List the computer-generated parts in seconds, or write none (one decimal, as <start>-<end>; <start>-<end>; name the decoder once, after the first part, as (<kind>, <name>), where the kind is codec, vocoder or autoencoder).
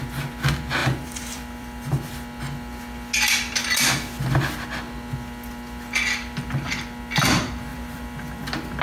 0.8-2.1 (vocoder, BigVGAN v2); 7.7-8.4